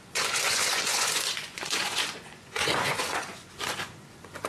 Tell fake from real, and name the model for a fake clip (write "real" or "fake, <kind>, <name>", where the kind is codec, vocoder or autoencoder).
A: fake, vocoder, Vocos